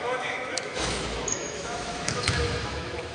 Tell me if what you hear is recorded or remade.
remade